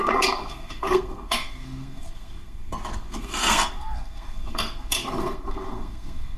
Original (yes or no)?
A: no